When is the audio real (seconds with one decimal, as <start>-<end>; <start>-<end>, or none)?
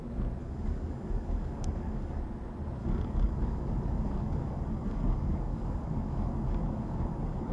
0.0-0.4; 2.2-2.8